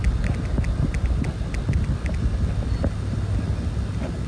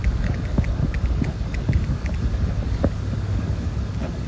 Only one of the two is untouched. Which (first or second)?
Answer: first